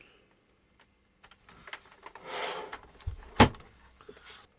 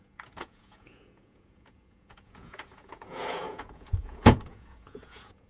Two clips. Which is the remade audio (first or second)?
second